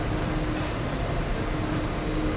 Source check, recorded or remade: recorded